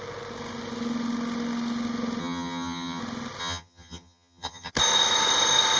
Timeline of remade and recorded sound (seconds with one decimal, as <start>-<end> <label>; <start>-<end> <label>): 0.0-2.2 recorded; 2.2-3.0 remade; 3.0-3.4 recorded; 3.4-4.7 remade; 4.7-5.8 recorded